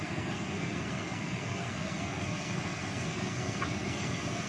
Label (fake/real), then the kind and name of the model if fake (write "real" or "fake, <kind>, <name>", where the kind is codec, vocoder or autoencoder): fake, codec, SNAC